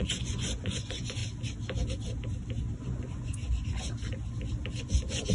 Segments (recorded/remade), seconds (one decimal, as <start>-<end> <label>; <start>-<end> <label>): 0.0-1.2 remade; 1.2-2.8 recorded; 2.8-3.4 remade; 3.4-4.8 recorded; 4.8-5.3 remade